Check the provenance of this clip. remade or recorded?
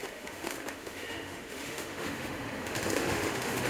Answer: remade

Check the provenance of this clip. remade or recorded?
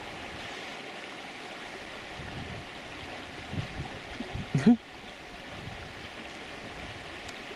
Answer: recorded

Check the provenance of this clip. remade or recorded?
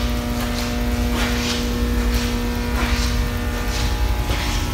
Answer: recorded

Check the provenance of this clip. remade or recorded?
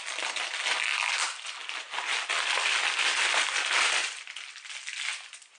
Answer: recorded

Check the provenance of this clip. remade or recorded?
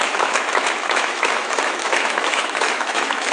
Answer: remade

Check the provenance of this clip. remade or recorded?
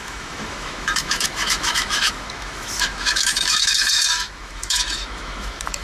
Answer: remade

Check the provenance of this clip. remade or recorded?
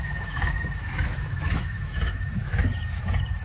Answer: remade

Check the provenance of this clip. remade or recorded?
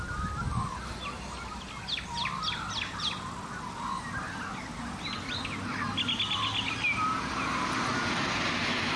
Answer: recorded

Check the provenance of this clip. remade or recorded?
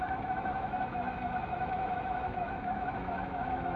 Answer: remade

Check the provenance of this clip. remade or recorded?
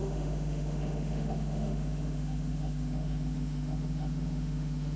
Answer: remade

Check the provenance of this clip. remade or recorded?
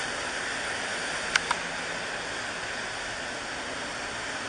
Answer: recorded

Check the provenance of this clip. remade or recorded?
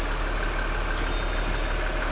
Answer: recorded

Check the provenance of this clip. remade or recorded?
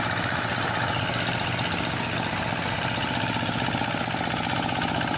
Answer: recorded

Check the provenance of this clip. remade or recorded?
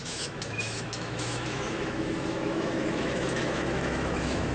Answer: remade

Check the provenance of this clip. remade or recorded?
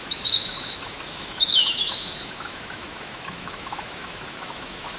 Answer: remade